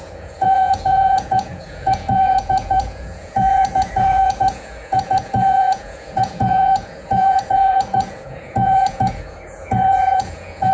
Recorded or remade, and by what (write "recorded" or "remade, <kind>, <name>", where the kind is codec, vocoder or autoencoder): remade, vocoder, Vocos